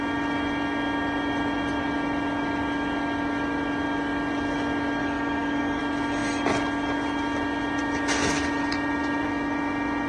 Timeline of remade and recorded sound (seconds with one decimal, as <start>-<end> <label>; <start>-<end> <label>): 0.0-5.0 recorded; 5.0-5.8 remade; 5.8-10.1 recorded